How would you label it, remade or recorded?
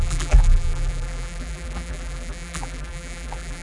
remade